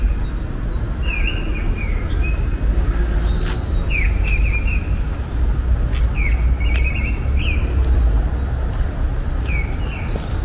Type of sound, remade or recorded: recorded